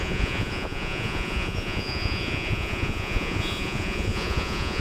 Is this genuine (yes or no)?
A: no